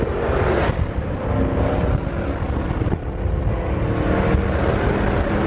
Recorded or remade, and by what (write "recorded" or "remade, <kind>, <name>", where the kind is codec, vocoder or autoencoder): recorded